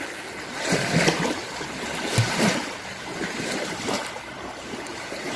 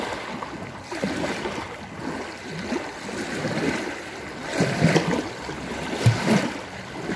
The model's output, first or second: first